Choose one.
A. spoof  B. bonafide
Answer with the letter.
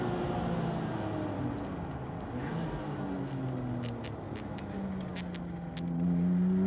B